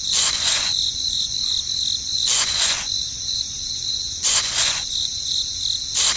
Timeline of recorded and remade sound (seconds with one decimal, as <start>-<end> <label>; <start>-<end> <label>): 0.0-1.5 remade; 1.5-2.1 recorded; 2.1-5.6 remade; 5.6-6.2 recorded